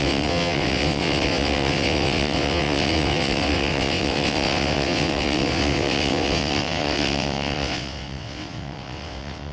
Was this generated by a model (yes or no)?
yes